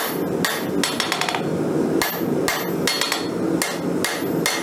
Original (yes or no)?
yes